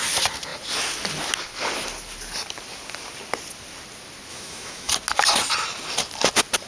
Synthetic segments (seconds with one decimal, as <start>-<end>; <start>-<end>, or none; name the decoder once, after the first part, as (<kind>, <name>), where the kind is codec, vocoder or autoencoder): 4.3-4.9 (autoencoder, DAC-VAE)